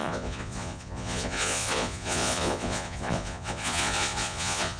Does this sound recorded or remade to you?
remade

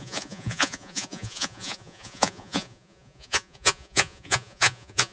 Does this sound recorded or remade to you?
remade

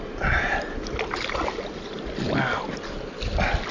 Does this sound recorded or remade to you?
recorded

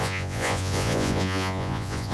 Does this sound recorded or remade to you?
remade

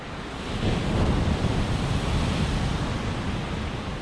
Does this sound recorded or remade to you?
recorded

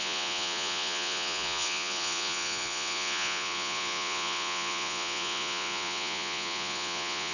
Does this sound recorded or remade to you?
remade